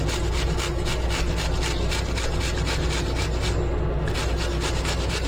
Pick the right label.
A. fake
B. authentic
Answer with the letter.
B